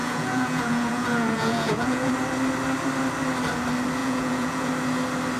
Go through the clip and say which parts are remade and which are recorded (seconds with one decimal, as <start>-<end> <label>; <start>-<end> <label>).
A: 0.0-2.1 remade; 2.1-4.0 recorded; 4.0-4.7 remade; 4.7-5.4 recorded